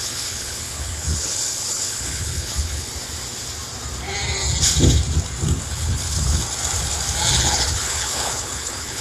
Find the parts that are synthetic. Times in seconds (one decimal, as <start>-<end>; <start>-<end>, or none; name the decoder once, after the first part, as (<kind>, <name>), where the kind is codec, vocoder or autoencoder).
0.0-2.9 (codec, HILCodec); 5.7-6.4; 7.3-9.0